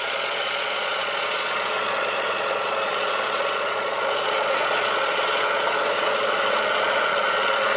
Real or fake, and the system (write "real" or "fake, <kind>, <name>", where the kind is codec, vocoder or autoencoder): fake, vocoder, Vocos